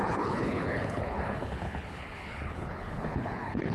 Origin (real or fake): fake